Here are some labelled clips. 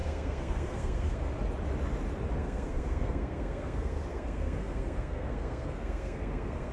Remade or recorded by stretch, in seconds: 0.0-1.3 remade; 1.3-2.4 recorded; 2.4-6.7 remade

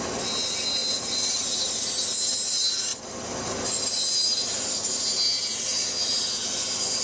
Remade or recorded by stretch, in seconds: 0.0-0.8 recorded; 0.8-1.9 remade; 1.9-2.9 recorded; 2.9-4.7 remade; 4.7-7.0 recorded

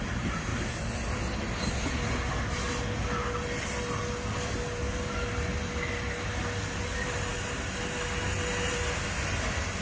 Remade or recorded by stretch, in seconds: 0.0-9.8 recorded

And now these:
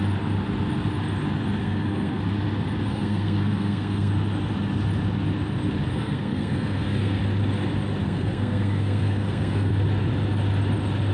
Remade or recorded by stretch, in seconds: 0.0-1.6 recorded; 1.6-2.2 remade; 2.2-2.9 recorded; 2.9-4.1 remade; 4.1-5.9 recorded; 5.9-7.2 remade; 7.2-8.0 recorded; 8.0-9.7 remade; 9.7-11.1 recorded

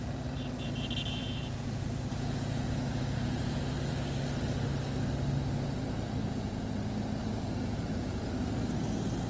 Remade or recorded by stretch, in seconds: 0.0-1.2 recorded; 1.2-3.6 remade; 3.6-6.2 recorded; 6.2-6.8 remade; 6.8-7.2 recorded; 7.2-8.5 remade; 8.5-9.3 recorded

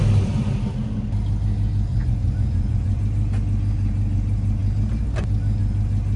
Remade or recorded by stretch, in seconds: 0.0-1.9 recorded; 1.9-3.0 remade; 3.0-6.2 recorded

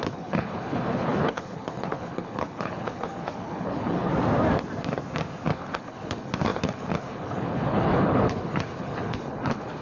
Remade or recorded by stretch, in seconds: 0.0-4.1 remade; 4.1-5.5 recorded; 5.5-9.8 remade